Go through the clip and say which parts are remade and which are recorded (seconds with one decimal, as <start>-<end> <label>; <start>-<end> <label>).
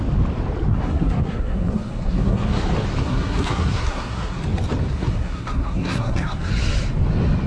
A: 0.0-0.7 recorded; 0.7-2.6 remade; 2.6-3.0 recorded; 3.0-4.4 remade; 4.4-4.9 recorded; 4.9-6.5 remade; 6.5-7.5 recorded